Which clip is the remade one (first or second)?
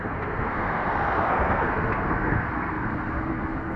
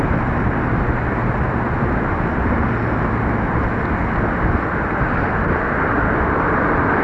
first